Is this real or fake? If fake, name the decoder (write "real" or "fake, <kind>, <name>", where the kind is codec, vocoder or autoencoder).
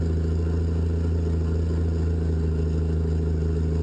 real